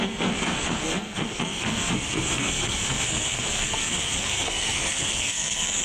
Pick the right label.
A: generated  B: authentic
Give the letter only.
A